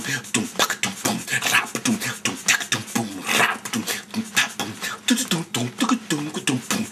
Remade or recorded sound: recorded